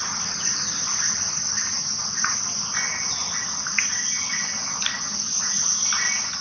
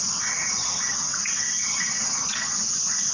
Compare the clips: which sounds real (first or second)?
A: first